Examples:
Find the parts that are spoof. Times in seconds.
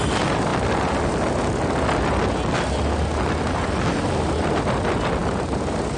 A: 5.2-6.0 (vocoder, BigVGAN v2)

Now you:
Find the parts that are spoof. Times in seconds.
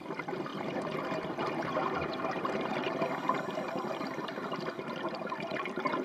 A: 0.5-3.2 (vocoder, BigVGAN v2)